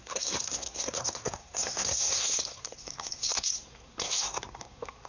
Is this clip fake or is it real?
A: fake